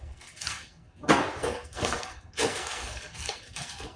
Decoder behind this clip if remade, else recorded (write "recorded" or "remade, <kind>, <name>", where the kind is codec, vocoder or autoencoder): remade, codec, SNAC